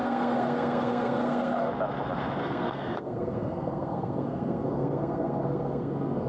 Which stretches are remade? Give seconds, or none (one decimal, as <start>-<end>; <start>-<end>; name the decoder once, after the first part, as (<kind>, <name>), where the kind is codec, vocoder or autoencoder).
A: 0.0-1.7 (codec, SNAC); 2.4-6.3